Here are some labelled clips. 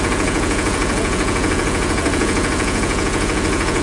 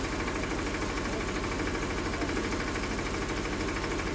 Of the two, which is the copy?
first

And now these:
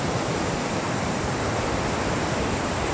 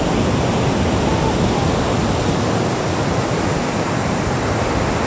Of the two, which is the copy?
first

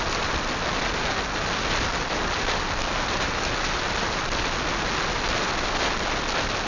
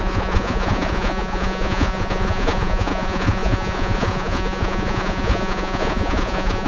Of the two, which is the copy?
second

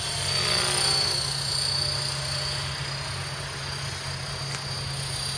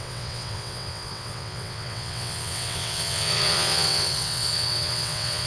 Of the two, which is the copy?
second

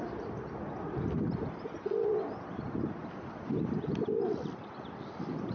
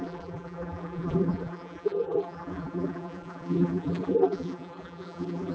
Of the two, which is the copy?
second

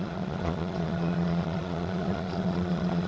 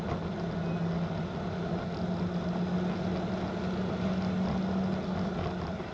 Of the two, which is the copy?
first